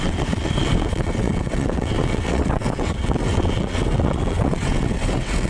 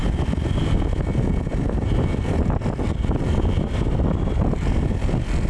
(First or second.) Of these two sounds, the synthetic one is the first